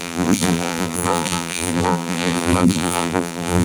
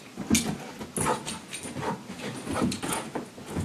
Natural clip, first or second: second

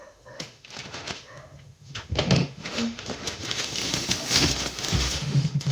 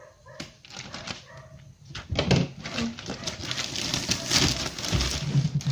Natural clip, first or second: second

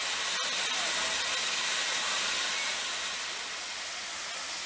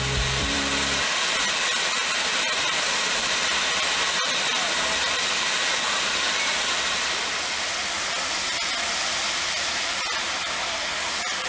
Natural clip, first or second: first